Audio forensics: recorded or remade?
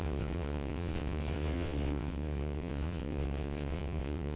remade